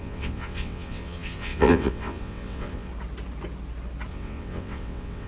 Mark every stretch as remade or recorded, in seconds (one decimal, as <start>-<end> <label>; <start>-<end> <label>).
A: 0.0-2.9 remade; 2.9-4.1 recorded; 4.1-5.3 remade